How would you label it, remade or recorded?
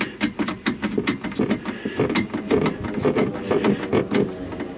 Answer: recorded